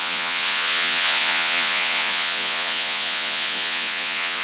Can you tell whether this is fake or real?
fake